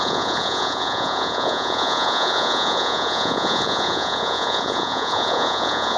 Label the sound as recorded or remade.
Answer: remade